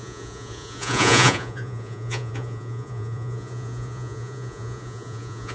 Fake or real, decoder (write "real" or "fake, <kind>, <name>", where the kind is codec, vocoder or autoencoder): fake, vocoder, Vocos